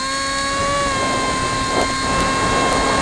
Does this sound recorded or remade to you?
recorded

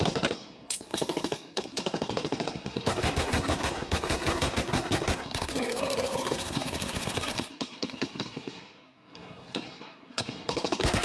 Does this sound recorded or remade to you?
remade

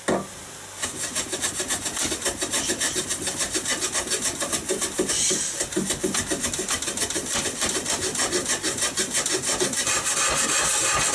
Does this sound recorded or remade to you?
recorded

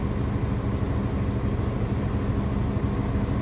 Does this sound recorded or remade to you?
recorded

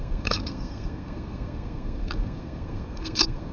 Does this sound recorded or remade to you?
remade